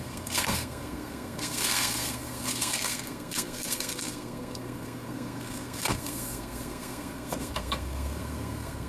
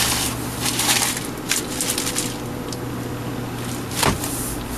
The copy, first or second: first